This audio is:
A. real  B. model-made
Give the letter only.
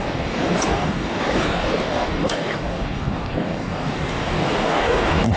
B